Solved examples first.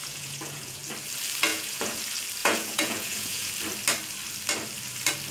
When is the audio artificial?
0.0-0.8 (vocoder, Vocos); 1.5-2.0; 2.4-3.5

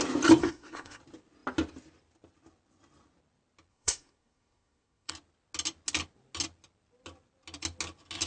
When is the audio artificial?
0.4-1.0 (codec, SNAC); 3.7-5.1